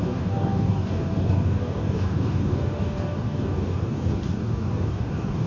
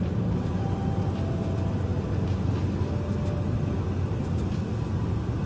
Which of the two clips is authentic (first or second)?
second